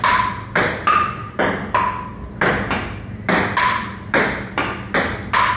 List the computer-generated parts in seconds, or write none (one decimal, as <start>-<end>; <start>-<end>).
none